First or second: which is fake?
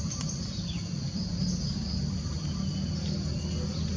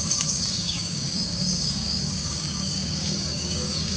second